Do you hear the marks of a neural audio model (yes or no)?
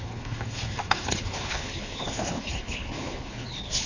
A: yes